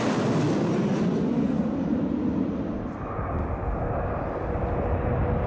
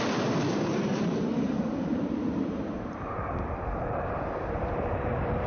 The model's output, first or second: second